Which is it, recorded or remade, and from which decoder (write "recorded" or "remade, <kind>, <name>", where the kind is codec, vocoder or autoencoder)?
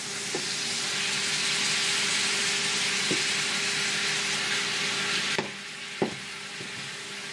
recorded